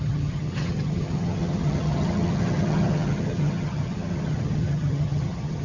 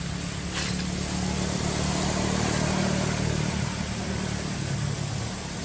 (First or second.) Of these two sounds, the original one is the second